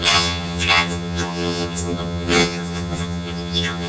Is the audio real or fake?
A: fake